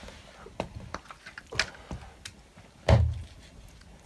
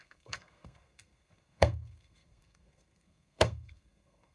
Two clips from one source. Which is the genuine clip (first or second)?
first